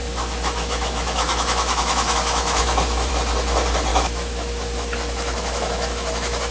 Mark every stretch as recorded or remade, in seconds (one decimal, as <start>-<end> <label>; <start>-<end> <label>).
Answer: 0.0-3.1 remade; 3.1-3.9 recorded; 3.9-6.5 remade